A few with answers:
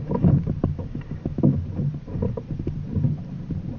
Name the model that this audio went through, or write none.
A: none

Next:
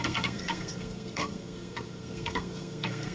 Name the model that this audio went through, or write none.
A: codec, SNAC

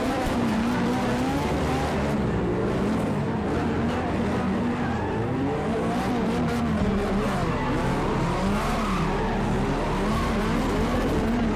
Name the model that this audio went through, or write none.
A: none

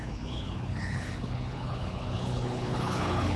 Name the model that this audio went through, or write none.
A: codec, HILCodec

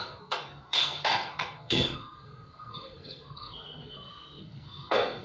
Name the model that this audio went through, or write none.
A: codec, SNAC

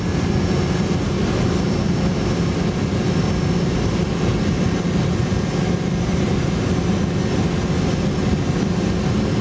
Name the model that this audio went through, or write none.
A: none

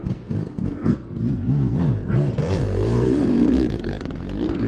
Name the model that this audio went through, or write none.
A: codec, SNAC